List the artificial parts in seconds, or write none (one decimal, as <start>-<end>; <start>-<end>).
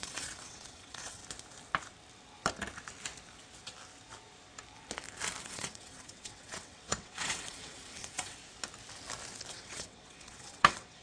0.0-1.2; 5.4-8.4; 9.5-11.0